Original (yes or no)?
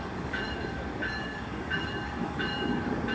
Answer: no